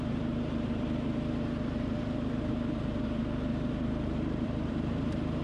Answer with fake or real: fake